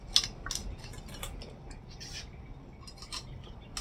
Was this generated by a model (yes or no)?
no